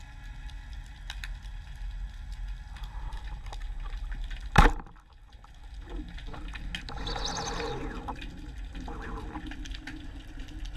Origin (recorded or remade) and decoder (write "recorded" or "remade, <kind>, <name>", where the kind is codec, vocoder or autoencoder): recorded